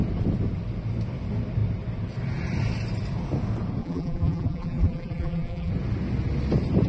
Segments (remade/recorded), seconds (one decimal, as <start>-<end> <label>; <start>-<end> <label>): 0.0-3.8 recorded; 3.8-5.7 remade; 5.7-6.9 recorded